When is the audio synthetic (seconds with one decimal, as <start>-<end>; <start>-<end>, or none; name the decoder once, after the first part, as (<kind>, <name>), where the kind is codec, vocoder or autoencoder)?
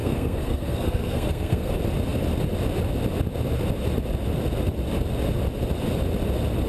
0.0-1.7 (codec, SNAC)